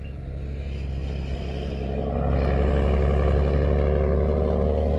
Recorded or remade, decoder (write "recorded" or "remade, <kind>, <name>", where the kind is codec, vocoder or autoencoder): recorded